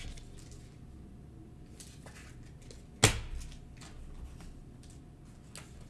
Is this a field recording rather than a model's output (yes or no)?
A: yes